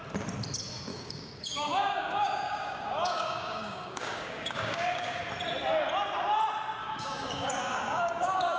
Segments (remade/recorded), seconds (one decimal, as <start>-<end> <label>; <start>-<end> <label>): 0.0-0.9 recorded; 0.9-5.2 remade; 5.2-6.8 recorded; 6.8-8.6 remade